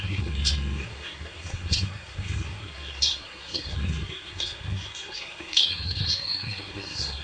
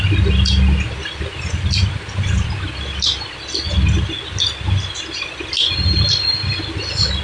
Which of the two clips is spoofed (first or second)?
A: first